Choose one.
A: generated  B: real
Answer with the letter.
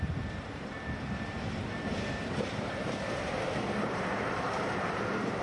A